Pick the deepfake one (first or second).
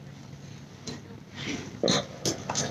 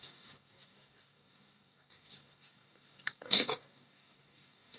second